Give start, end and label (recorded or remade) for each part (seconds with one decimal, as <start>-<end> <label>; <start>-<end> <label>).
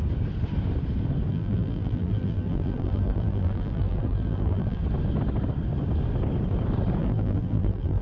0.0-1.3 recorded; 1.3-4.8 remade; 4.8-7.0 recorded; 7.0-8.0 remade